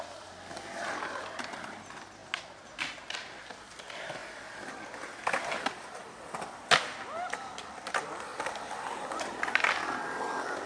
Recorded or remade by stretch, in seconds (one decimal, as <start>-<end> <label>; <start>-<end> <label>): 0.0-2.2 remade; 2.2-2.8 recorded; 2.8-4.2 remade; 4.2-7.3 recorded; 7.3-8.3 remade; 8.3-10.7 recorded